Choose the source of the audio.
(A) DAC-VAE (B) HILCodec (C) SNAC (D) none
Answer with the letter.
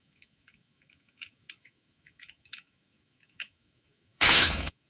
A